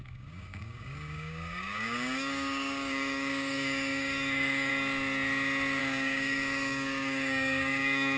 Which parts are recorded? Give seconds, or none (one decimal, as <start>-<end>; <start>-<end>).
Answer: 4.7-5.8